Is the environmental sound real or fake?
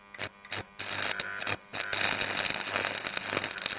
real